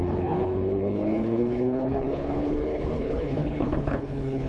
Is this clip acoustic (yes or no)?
no